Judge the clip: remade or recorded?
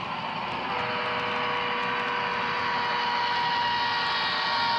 recorded